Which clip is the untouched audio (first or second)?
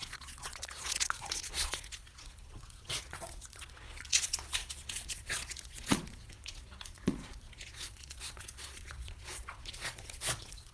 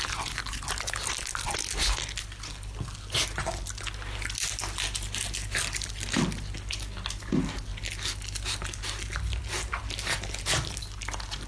second